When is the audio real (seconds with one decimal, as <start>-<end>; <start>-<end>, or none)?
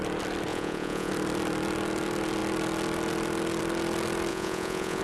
0.0-0.5; 1.1-4.3